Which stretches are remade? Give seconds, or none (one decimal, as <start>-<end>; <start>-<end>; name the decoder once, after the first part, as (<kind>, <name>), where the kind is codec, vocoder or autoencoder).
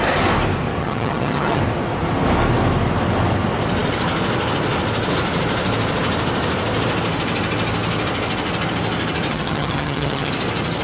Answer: 0.8-1.6 (vocoder, HiFi-GAN); 9.3-10.3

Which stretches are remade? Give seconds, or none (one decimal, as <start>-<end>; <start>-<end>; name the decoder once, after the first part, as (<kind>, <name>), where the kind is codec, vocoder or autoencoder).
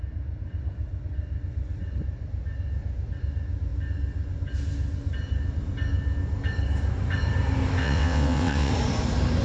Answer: 7.8-8.7 (vocoder, WaveNeXt)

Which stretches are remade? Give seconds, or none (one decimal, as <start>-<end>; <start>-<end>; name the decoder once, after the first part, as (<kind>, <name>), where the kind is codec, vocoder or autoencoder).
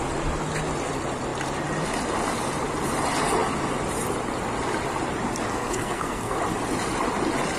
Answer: 5.5-6.4 (codec, SNAC)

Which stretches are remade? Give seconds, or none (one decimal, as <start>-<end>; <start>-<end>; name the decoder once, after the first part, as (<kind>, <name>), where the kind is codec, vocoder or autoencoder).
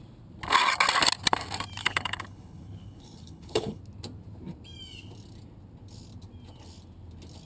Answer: 1.8-3.8 (codec, HILCodec)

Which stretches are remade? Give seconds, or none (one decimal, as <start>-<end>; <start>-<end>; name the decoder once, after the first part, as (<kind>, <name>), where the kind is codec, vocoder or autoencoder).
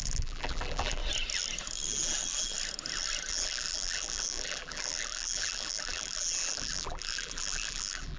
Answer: 0.0-1.0 (vocoder, BigVGAN v2); 3.3-8.2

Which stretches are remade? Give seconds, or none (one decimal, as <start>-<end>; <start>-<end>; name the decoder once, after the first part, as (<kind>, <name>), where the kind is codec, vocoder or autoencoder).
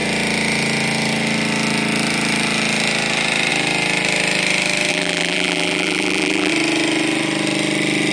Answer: 4.9-6.5 (vocoder, BigVGAN v2)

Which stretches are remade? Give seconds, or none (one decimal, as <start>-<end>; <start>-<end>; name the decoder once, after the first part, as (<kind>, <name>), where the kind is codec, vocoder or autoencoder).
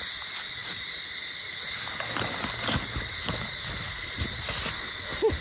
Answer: none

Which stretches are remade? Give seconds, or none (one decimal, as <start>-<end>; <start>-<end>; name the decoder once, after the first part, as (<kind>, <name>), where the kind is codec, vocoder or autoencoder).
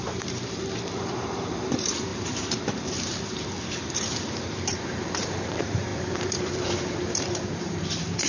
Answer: 0.0-8.3 (vocoder, BigVGAN v2)